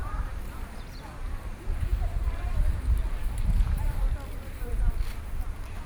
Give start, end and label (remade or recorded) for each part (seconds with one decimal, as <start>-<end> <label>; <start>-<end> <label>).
0.0-0.8 remade; 0.8-1.9 recorded; 1.9-4.1 remade; 4.1-4.7 recorded; 4.7-5.9 remade